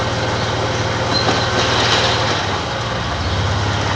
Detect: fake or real real